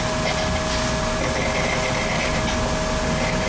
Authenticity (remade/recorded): recorded